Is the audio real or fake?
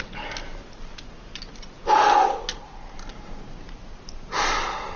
real